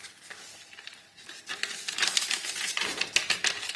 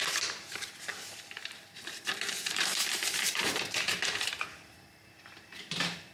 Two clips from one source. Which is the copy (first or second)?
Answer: second